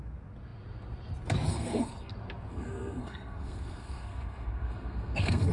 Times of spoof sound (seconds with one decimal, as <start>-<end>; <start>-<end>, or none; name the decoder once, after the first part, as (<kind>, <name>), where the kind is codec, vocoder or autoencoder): 1.5-2.1 (codec, SNAC); 2.5-5.5